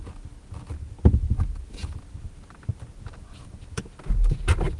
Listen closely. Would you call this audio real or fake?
real